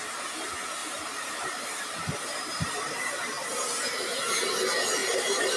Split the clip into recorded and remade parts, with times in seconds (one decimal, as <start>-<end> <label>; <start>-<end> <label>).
0.0-0.8 recorded; 0.8-4.2 remade; 4.2-5.0 recorded; 5.0-5.6 remade